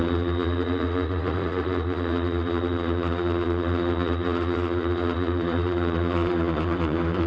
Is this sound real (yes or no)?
no